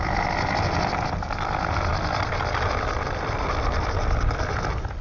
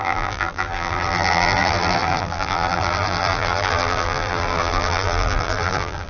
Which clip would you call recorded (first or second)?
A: first